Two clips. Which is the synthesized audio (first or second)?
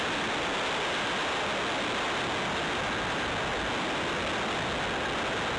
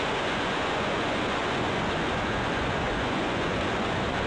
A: second